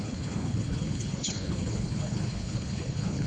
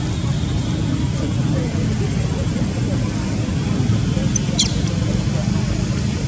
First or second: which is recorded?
second